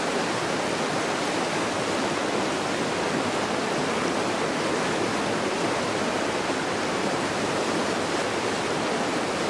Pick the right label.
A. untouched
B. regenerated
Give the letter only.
A